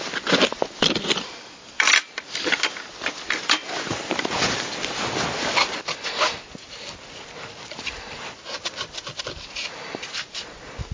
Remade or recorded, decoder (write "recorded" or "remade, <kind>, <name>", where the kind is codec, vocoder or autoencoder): remade, vocoder, BigVGAN v2